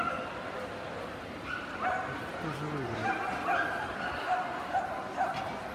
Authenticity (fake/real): real